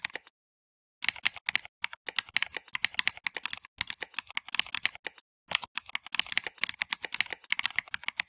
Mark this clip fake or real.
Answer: real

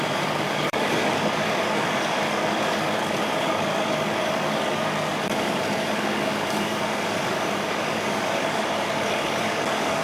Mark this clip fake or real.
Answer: fake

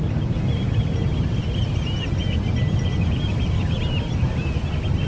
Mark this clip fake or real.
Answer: real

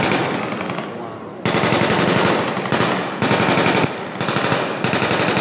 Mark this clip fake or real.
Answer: real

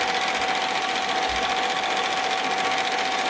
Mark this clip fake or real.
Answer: real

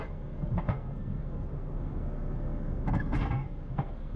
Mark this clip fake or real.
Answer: fake